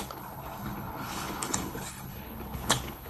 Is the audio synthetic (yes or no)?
yes